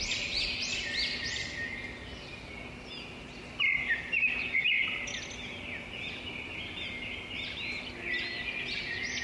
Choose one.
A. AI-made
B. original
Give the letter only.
B